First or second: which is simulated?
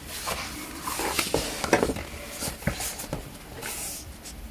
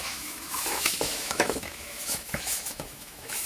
second